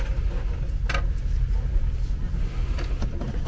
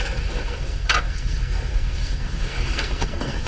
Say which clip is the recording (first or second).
first